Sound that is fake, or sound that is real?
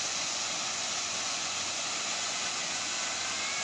fake